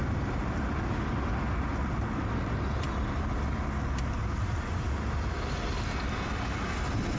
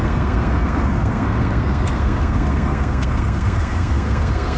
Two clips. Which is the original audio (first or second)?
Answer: first